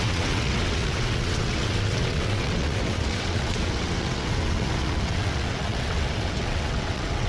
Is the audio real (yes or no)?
no